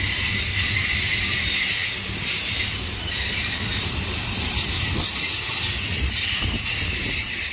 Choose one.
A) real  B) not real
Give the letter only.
A